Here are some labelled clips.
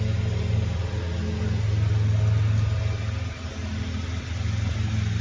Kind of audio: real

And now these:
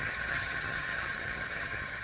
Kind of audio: fake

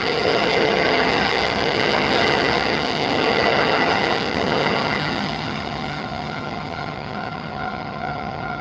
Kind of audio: fake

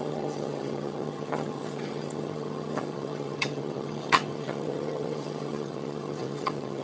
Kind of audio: fake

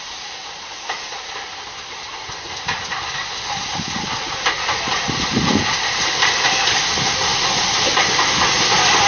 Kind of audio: real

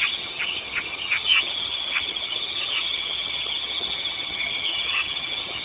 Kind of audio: fake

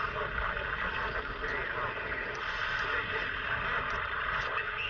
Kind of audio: real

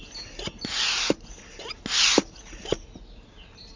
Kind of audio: real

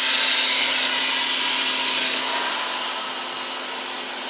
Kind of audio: real